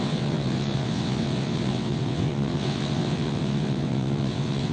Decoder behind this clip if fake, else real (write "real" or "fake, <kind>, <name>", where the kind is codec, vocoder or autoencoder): fake, vocoder, WaveNeXt